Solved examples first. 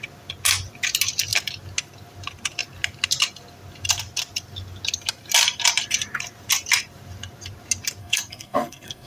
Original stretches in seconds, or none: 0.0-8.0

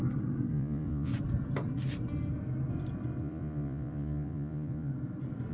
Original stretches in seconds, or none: 0.0-0.5; 1.1-3.2; 4.9-5.5

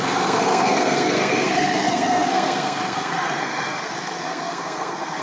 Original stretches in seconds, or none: none

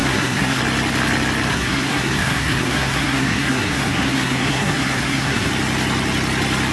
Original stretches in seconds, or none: 0.6-1.5; 5.5-6.7

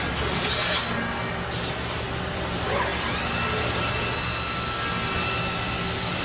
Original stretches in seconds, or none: 0.0-6.2

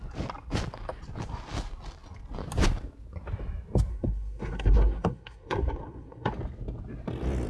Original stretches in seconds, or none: 0.0-3.9; 6.3-7.5